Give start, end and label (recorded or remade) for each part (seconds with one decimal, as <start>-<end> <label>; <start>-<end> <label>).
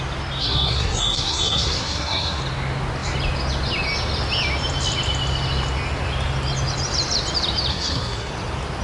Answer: 0.0-0.4 recorded; 0.4-2.4 remade; 2.4-7.7 recorded; 7.7-8.3 remade; 8.3-8.8 recorded